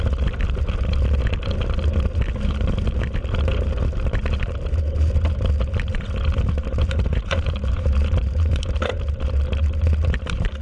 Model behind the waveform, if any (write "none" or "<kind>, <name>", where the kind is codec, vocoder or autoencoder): vocoder, BigVGAN v2